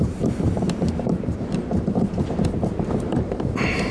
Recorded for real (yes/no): no